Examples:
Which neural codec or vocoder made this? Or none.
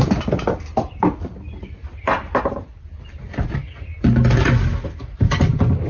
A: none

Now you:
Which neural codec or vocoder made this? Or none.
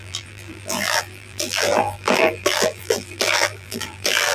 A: vocoder, BigVGAN v2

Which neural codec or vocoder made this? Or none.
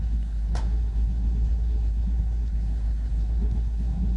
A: codec, SNAC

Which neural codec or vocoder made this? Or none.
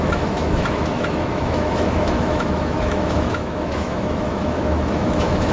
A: autoencoder, DAC-VAE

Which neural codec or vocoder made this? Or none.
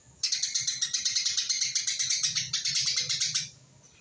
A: none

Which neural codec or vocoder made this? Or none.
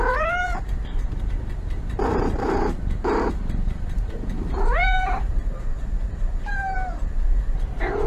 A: vocoder, BigVGAN v2